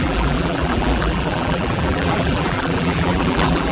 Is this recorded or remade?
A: remade